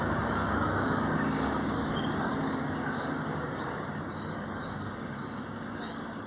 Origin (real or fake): fake